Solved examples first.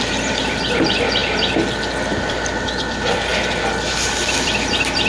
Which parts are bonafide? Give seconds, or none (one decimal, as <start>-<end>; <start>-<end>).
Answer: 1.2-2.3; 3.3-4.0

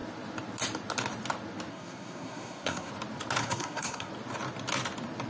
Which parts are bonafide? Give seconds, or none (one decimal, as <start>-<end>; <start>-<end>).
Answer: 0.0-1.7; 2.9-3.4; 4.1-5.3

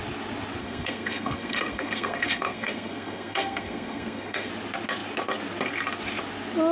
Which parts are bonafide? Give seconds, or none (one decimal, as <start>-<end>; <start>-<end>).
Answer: 0.0-0.6; 4.5-6.7